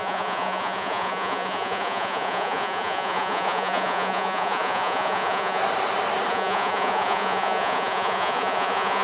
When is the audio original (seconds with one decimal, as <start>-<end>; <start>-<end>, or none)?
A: 5.6-6.3